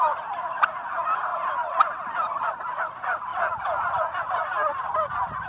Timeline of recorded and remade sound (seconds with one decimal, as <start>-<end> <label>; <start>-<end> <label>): 0.0-5.5 recorded

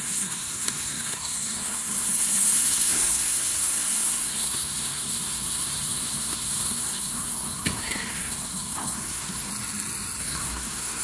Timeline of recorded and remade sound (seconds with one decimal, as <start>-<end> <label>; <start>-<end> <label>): 0.0-9.5 remade; 9.5-10.2 recorded; 10.2-11.0 remade